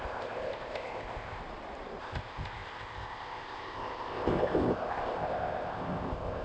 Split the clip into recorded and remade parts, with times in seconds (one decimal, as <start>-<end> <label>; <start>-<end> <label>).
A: 0.0-1.4 remade; 1.4-2.0 recorded; 2.0-6.4 remade